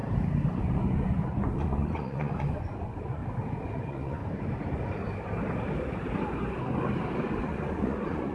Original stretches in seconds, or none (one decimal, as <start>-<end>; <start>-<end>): 0.0-0.6; 3.2-3.7; 4.2-7.4